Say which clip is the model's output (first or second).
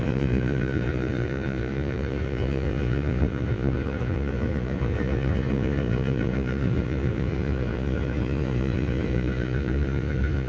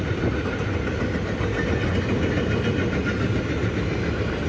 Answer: first